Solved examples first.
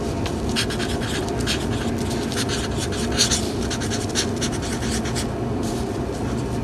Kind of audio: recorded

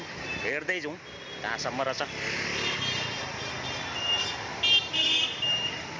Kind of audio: recorded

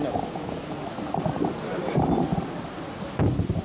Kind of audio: recorded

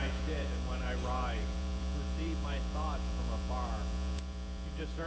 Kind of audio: remade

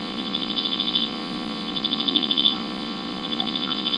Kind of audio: remade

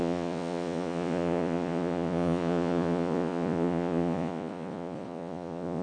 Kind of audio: remade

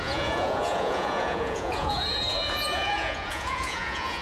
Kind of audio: remade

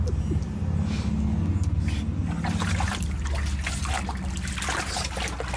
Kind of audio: recorded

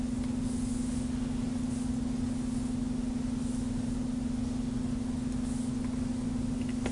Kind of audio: recorded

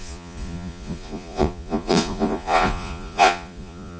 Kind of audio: remade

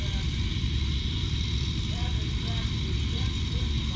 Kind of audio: recorded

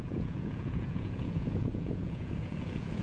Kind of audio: remade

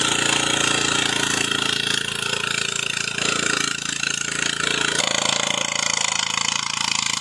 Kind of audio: recorded